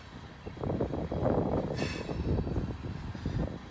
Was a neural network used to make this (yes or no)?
no